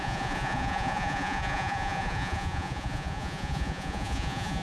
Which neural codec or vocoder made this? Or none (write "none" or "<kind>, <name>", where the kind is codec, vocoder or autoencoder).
vocoder, Vocos